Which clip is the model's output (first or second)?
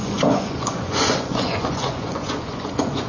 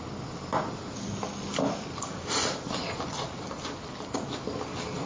first